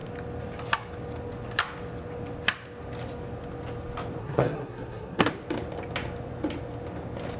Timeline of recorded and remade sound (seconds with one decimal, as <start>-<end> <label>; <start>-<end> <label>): 0.0-4.2 recorded; 4.2-5.3 remade; 5.3-7.4 recorded